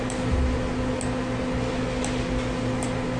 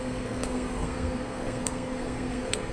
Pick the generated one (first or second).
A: second